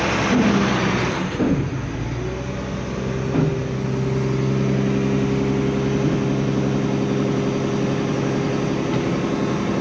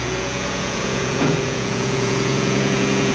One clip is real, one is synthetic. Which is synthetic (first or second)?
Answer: second